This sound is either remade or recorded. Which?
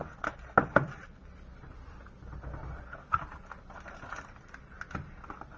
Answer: recorded